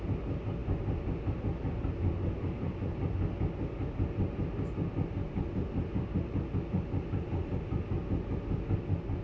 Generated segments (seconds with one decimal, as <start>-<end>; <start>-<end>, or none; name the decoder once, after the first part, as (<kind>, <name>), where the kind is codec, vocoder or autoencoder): none

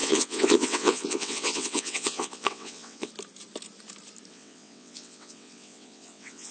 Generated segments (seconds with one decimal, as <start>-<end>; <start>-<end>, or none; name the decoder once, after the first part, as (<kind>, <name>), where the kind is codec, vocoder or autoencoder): 0.0-3.1 (vocoder, WaveNeXt); 4.3-6.5

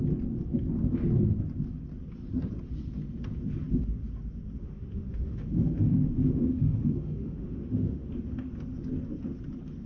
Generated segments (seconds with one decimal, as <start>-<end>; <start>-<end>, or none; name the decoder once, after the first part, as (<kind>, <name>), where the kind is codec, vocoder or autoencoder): 4.6-8.1 (autoencoder, DAC-VAE)

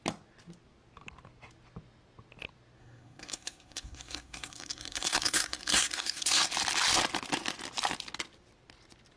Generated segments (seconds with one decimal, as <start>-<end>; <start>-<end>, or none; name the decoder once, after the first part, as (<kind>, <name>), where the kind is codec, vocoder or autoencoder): 2.8-6.5 (codec, SNAC)

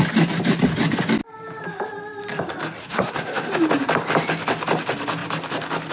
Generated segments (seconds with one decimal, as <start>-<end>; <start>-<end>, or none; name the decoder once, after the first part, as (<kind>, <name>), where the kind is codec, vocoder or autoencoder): 2.8-3.5 (codec, SNAC)

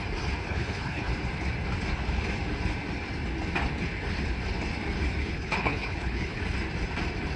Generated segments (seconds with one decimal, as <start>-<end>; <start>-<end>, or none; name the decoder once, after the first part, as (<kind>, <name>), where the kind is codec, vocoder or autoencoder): 0.4-1.1 (codec, HILCodec); 5.2-6.4